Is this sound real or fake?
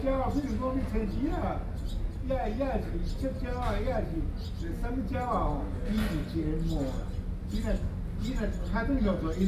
real